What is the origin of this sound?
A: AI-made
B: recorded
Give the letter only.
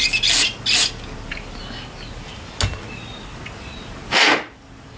B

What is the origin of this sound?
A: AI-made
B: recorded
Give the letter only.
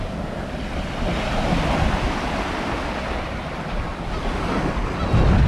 B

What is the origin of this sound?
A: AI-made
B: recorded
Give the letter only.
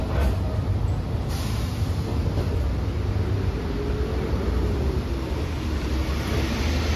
B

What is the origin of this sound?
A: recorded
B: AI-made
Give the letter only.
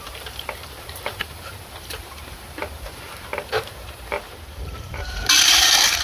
B